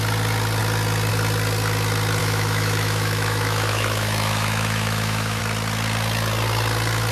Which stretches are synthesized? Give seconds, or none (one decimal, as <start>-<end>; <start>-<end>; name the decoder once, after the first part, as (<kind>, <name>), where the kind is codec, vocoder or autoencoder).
2.2-5.4 (autoencoder, DAC-VAE)